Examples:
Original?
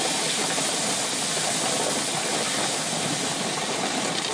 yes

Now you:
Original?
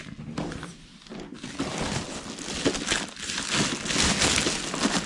yes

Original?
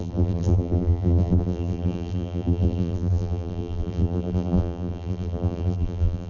no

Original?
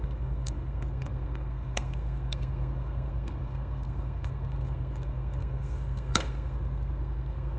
no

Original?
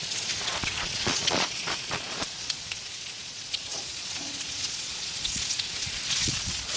no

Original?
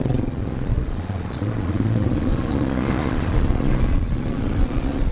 no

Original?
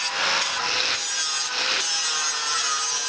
yes